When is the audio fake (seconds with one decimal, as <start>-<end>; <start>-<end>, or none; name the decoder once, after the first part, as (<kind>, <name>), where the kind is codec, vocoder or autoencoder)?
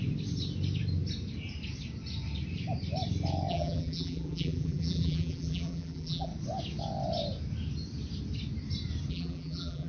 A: 3.5-6.3 (vocoder, BigVGAN v2); 9.1-9.9